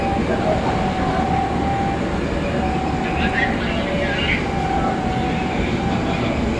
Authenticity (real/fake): real